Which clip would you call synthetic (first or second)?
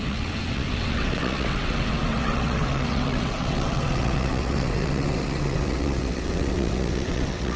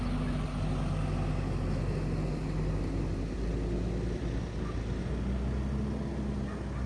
first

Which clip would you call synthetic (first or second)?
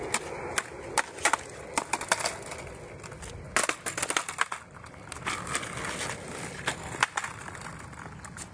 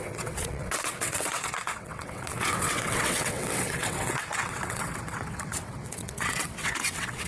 second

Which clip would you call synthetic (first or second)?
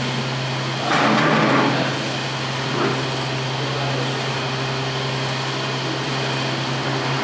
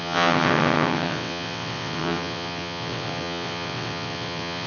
second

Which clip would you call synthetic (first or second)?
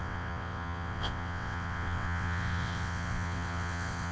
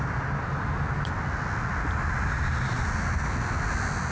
first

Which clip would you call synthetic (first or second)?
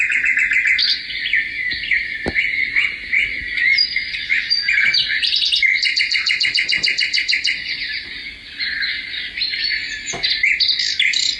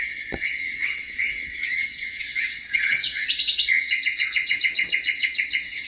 second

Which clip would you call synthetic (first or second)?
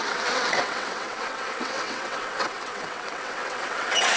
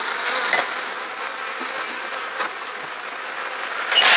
first